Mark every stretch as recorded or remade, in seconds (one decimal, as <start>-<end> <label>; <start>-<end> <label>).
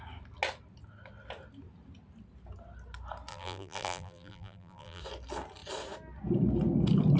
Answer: 0.0-3.3 recorded; 3.3-5.0 remade; 5.0-7.2 recorded